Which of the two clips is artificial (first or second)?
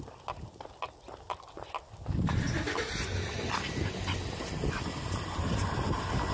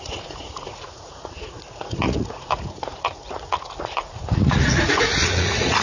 second